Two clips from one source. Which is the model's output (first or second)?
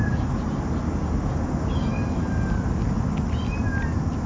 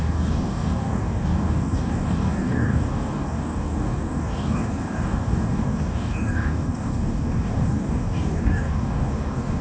second